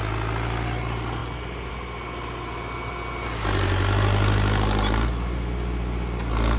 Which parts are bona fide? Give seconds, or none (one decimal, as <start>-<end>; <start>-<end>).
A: 0.0-6.6